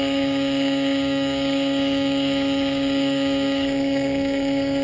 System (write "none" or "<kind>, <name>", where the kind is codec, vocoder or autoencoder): codec, DAC